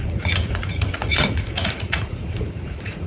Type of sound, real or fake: fake